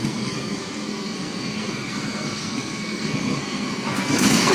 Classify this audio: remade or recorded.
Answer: remade